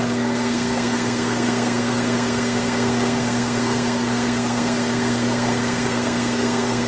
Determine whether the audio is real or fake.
fake